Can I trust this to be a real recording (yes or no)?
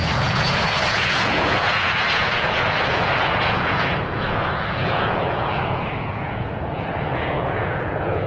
no